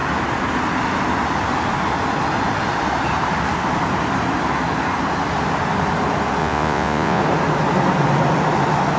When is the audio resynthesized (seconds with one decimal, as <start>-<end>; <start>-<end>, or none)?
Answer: 6.4-7.2